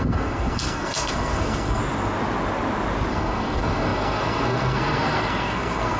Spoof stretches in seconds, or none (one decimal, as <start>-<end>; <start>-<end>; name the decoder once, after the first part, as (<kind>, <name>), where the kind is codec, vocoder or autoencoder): 0.0-1.8 (codec, SNAC); 3.1-6.0